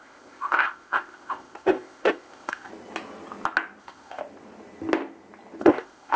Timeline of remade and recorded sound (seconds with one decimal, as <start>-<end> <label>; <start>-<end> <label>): 0.0-2.7 remade; 2.7-3.8 recorded; 3.8-4.2 remade; 4.2-5.6 recorded; 5.6-6.2 remade